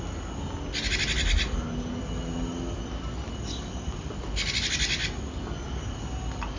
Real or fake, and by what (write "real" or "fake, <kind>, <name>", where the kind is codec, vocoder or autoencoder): real